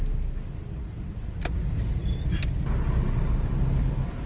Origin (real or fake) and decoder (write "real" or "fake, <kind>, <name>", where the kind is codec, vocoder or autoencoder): real